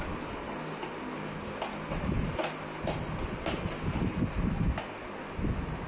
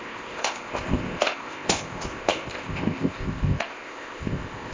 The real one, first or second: first